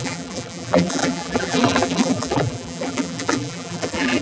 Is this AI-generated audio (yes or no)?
yes